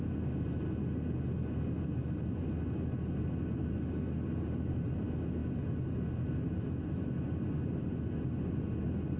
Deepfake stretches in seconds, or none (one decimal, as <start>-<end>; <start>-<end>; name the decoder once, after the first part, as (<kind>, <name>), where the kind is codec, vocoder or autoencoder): none